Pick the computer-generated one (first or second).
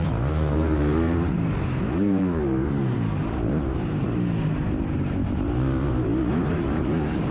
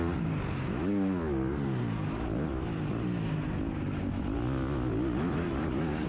first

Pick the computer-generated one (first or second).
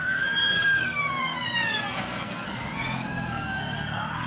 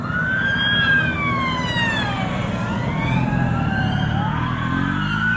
first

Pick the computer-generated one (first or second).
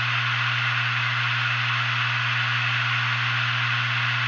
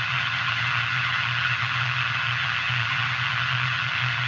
second